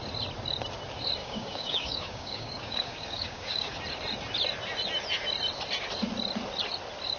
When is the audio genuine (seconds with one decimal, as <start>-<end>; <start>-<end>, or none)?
0.0-1.2; 3.7-7.2